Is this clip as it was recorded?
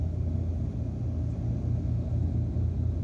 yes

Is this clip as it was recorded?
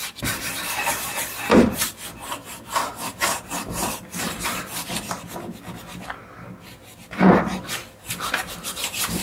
no